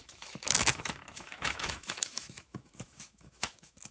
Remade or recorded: remade